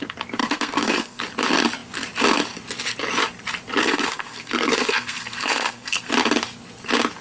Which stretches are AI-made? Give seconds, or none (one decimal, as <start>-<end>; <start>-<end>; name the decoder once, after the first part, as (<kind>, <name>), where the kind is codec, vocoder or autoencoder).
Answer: 0.4-1.2 (codec, SNAC); 3.8-6.1